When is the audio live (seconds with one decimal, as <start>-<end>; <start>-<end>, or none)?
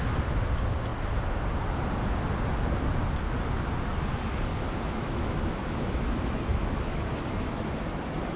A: 0.0-4.5; 7.7-8.4